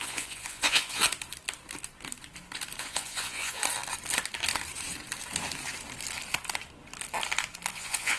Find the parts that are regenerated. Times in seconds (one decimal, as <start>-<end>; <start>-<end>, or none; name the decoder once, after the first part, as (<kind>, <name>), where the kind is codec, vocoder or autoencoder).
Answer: 0.0-1.0 (vocoder, Vocos); 2.8-3.6; 7.7-8.2